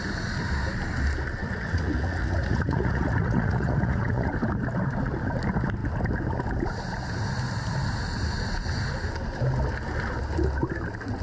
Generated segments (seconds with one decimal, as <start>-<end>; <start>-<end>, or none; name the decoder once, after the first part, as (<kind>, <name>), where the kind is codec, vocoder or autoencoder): 1.4-4.3 (vocoder, Vocos)